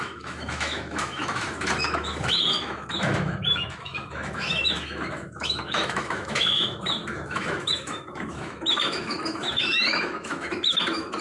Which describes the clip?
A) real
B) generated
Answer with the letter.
B